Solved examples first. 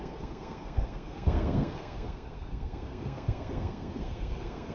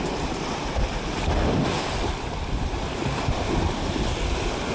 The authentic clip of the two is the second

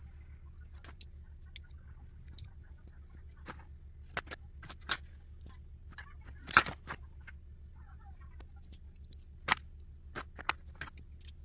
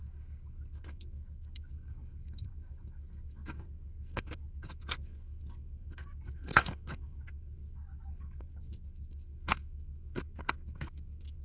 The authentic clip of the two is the first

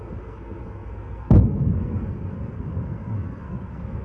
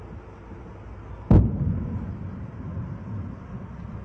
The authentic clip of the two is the second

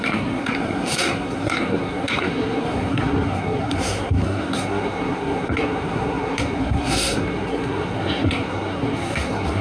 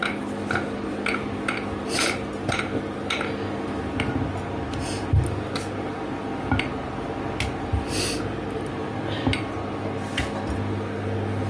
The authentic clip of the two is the second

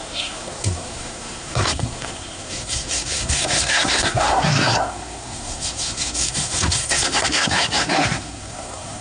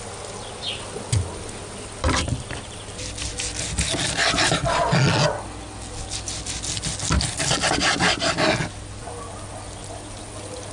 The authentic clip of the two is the second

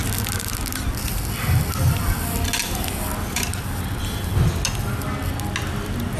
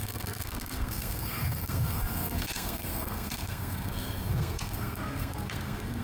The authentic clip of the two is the first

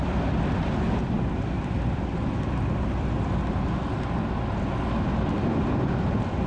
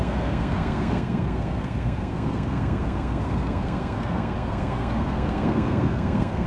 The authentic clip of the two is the first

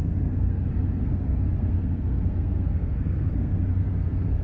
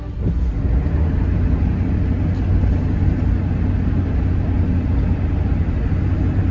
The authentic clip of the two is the second